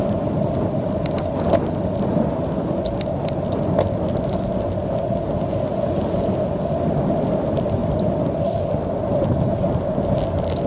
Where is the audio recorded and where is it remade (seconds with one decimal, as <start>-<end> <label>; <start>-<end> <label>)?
0.0-7.8 recorded; 7.8-9.5 remade; 9.5-10.7 recorded